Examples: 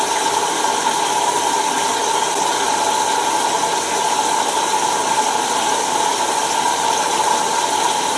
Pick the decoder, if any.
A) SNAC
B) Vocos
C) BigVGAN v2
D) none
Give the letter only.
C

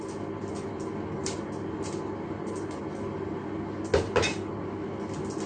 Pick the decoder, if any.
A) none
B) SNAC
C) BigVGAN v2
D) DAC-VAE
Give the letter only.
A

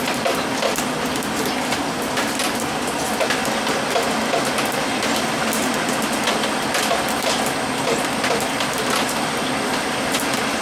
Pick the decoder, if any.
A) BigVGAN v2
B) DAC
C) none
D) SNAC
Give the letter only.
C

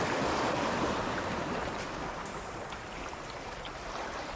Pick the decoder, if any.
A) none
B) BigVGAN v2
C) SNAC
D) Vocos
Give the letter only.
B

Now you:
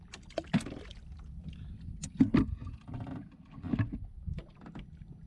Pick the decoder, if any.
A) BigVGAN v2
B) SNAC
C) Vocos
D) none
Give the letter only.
D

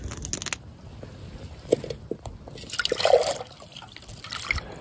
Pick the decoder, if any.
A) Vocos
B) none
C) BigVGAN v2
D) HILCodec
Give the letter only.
B